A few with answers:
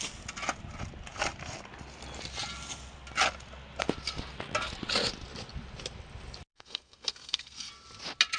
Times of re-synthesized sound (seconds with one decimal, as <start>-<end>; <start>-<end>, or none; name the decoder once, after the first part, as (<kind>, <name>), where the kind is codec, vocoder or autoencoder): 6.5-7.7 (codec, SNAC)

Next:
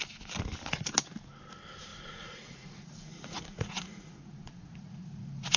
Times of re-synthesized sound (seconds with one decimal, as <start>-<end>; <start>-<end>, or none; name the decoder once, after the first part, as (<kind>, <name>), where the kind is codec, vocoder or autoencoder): 1.9-5.6 (vocoder, Vocos)

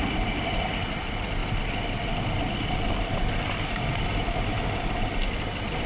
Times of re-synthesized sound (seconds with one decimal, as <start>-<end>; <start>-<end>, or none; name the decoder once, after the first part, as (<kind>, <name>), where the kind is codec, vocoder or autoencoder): 1.4-4.5 (vocoder, BigVGAN v2)

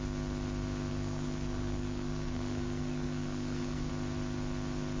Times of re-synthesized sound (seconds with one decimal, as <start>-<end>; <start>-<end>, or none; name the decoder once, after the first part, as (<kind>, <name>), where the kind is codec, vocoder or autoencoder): 0.9-3.9 (codec, SNAC)

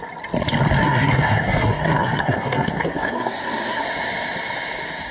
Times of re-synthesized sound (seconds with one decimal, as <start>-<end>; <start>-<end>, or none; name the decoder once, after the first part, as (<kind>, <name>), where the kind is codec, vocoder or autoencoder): 0.8-3.8 (codec, SNAC)

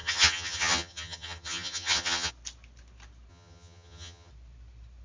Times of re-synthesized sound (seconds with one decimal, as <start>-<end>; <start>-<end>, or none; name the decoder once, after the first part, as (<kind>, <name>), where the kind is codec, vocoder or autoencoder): 0.0-2.3 (vocoder, HiFi-GAN); 3.3-4.3